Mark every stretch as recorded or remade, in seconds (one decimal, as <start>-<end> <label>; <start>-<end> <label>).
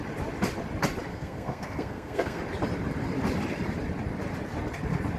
0.0-1.1 recorded; 1.1-2.4 remade; 2.4-5.2 recorded